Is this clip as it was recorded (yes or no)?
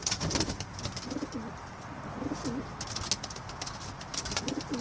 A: yes